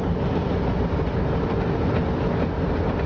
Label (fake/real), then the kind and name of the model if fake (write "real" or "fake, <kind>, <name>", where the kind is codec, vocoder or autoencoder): real